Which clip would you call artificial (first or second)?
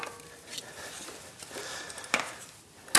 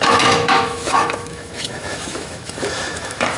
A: second